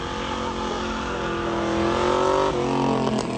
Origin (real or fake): real